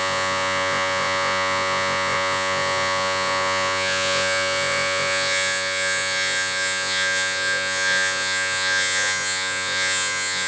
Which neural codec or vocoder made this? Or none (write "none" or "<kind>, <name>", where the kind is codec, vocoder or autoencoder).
vocoder, Vocos